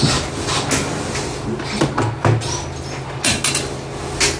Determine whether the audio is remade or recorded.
recorded